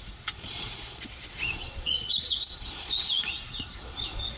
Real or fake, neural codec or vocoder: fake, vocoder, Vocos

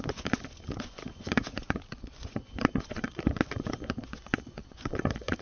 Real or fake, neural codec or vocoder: fake, vocoder, Vocos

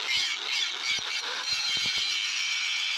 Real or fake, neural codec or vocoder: real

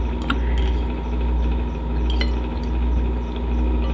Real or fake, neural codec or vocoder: real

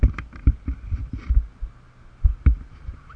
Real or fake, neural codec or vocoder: real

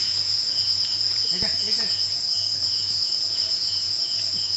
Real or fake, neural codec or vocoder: fake, vocoder, Vocos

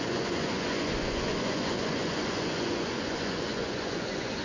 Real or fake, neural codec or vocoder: fake, vocoder, Vocos